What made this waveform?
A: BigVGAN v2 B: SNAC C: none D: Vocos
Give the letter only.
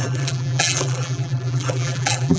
A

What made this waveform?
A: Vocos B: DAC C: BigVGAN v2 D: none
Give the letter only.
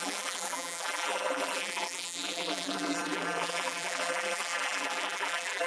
C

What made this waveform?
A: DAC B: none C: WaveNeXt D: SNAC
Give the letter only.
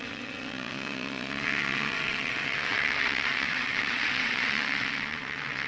C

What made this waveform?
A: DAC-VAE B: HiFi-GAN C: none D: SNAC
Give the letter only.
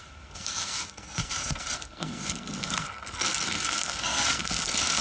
D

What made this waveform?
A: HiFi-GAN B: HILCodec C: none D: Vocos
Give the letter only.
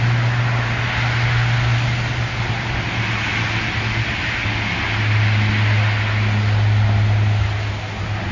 C